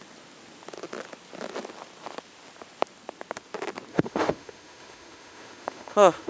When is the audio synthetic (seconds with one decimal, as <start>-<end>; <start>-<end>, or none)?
3.9-6.3